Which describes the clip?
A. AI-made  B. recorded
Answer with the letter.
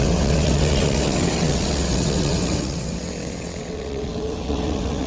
A